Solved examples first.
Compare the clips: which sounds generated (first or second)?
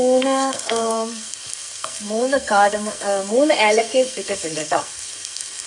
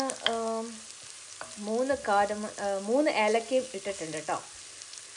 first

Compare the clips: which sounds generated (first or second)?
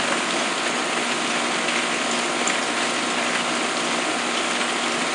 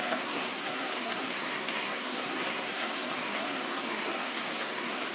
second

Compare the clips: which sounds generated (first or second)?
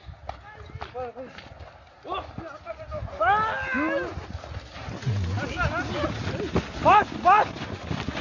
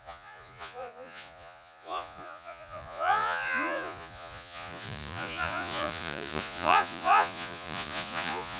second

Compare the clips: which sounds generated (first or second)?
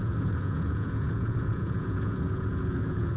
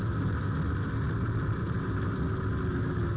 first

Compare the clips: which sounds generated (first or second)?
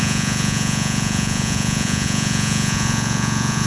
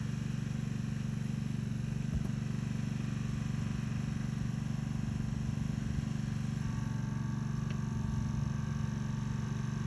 first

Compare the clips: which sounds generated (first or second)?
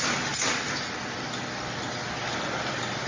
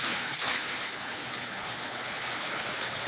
second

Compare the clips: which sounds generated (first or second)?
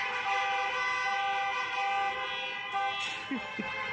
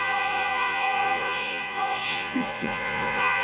second